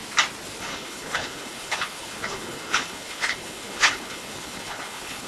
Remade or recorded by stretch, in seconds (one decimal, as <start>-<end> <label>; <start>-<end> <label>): 0.0-0.6 recorded; 0.6-5.3 remade